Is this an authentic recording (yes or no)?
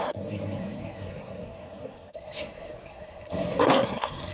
no